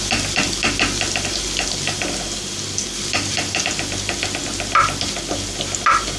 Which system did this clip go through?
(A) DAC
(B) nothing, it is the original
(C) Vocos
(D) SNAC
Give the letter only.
B